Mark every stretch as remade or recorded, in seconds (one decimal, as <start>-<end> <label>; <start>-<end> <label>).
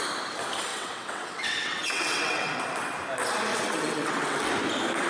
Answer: 0.0-0.7 recorded; 0.7-2.5 remade; 2.5-3.5 recorded; 3.5-4.5 remade; 4.5-5.1 recorded